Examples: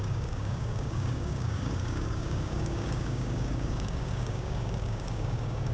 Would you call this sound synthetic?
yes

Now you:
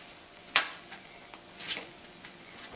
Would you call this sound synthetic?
yes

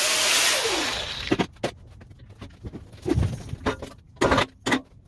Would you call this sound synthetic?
no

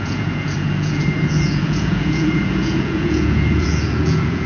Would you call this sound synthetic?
yes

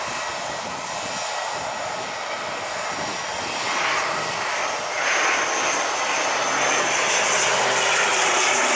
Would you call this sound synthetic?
no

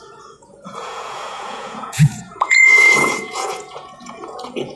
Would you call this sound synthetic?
yes